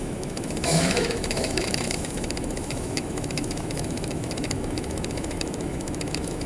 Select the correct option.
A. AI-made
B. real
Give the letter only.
A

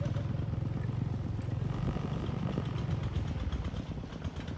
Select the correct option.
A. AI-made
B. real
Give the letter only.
B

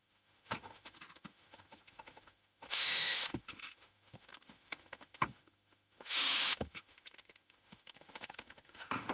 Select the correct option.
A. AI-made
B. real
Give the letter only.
A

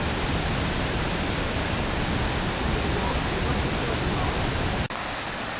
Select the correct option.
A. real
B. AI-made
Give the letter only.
A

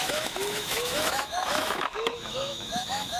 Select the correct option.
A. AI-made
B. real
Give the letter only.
A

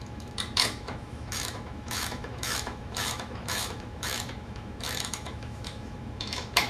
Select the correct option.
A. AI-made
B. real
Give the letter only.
A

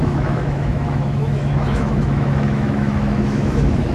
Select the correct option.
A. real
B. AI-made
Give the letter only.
B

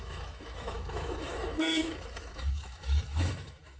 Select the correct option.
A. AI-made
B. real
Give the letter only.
A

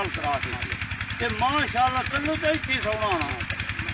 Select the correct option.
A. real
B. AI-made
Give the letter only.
A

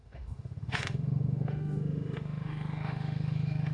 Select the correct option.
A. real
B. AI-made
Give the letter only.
B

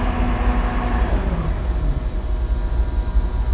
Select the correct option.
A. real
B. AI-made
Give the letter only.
A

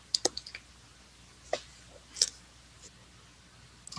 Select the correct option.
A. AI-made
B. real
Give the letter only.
B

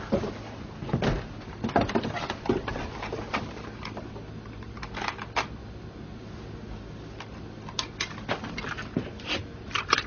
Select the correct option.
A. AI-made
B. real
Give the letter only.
B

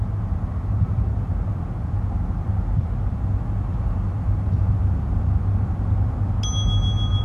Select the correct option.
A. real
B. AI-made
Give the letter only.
A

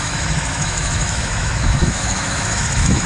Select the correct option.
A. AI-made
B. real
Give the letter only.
A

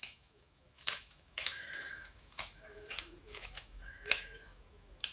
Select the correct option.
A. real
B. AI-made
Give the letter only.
B